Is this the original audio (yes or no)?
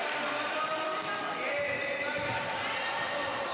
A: yes